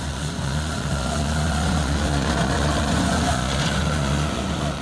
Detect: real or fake fake